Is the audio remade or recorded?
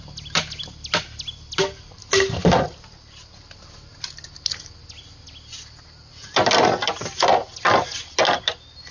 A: recorded